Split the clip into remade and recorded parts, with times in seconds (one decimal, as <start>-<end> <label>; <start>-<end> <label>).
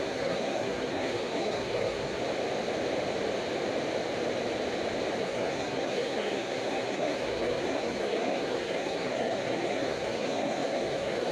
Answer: 0.0-2.2 remade; 2.2-5.2 recorded; 5.2-11.3 remade